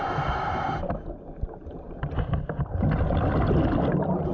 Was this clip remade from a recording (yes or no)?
no